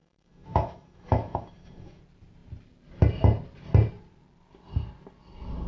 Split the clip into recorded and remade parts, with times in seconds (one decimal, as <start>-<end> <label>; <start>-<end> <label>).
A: 0.0-2.0 remade; 2.0-5.7 recorded